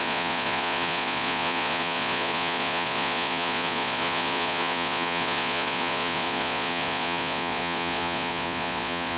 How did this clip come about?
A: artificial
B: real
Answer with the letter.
A